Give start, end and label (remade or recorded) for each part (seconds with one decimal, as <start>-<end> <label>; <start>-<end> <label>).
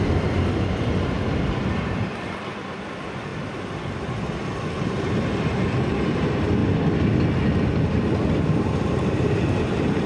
0.0-10.1 recorded